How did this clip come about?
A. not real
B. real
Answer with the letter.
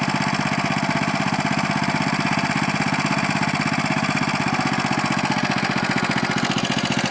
B